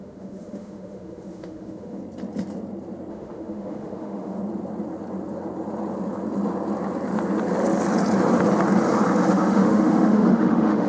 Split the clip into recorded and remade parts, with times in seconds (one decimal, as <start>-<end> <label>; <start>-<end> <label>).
0.0-2.0 remade; 2.0-3.1 recorded; 3.1-4.4 remade; 4.4-9.3 recorded; 9.3-10.9 remade